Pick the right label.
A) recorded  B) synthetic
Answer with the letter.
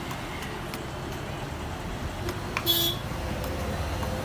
A